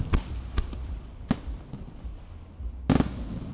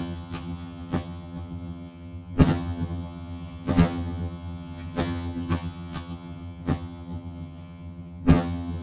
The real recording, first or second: first